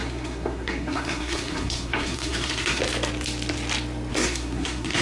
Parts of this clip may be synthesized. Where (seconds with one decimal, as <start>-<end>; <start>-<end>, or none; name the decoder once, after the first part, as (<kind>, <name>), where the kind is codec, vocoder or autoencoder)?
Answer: 0.0-2.8 (codec, SNAC); 4.1-5.0